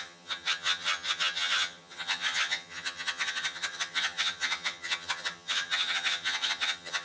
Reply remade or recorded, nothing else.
remade